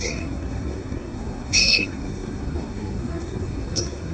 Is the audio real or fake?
fake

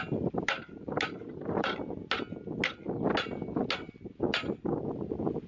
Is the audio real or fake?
real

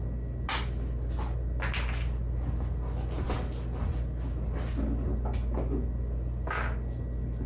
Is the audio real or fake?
real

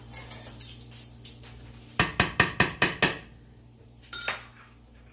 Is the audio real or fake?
real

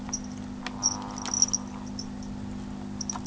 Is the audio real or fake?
real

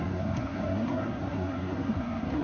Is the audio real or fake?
fake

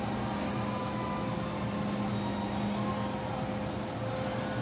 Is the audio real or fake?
real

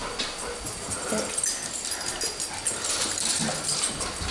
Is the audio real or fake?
real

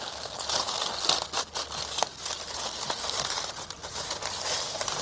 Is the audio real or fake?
real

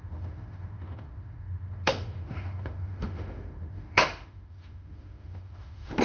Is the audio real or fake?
fake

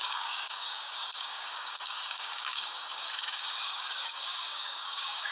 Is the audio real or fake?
fake